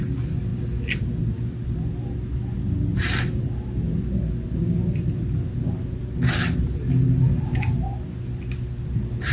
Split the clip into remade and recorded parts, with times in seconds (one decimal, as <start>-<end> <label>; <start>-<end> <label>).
0.0-9.3 recorded